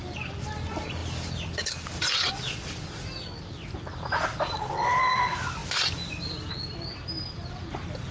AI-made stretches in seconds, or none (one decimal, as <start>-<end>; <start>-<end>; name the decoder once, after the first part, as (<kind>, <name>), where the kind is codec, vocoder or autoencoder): none